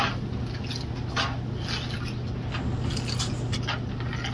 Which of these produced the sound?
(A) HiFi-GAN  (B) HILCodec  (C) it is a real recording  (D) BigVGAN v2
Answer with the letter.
C